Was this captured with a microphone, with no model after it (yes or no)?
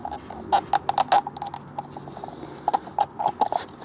yes